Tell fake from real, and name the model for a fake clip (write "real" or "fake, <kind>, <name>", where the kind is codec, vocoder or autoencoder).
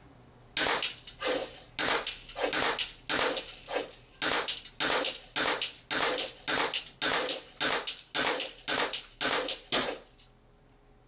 real